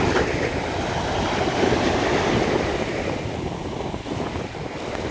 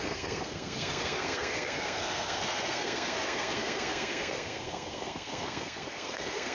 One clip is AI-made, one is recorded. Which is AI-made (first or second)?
second